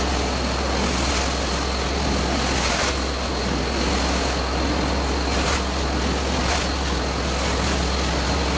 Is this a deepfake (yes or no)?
no